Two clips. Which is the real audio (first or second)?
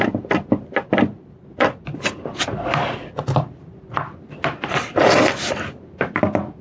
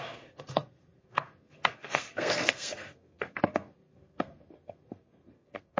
first